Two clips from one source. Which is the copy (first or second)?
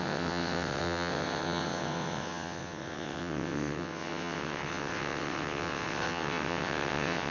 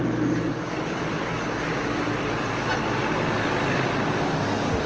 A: first